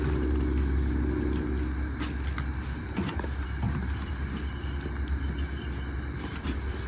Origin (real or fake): real